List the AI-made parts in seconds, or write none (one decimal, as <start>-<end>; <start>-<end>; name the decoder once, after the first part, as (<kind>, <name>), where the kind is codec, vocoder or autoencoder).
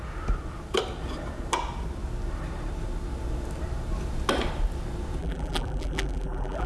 5.2-6.7 (vocoder, BigVGAN v2)